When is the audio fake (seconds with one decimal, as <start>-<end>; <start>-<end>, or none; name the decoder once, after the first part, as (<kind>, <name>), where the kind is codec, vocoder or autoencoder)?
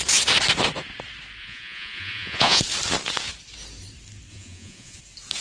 1.4-2.6 (vocoder, Vocos); 4.3-5.0